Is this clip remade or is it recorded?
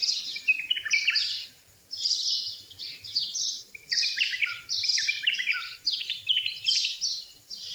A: remade